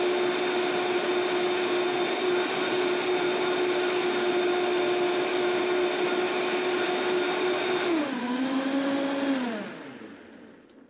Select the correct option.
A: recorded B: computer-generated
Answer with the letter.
A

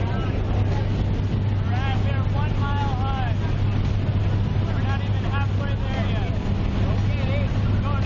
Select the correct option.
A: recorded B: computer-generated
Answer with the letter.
A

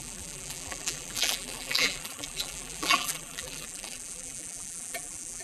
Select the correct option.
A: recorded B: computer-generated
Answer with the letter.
B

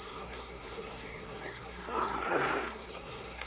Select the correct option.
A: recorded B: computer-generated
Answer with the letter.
B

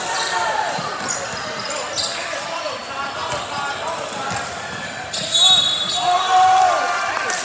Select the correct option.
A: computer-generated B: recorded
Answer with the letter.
B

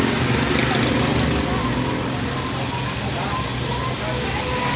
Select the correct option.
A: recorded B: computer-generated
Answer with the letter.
A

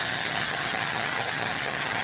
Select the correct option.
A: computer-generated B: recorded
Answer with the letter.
A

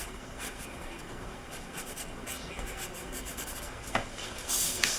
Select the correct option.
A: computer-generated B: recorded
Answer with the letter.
A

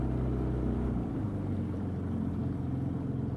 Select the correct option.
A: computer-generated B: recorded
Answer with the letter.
B